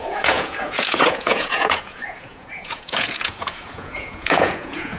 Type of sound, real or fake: fake